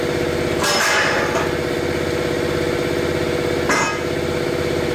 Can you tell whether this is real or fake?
real